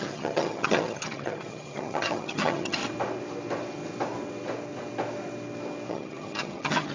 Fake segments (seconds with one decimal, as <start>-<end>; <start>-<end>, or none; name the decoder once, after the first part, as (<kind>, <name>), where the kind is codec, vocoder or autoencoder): 0.0-2.8 (vocoder, HiFi-GAN); 5.9-6.9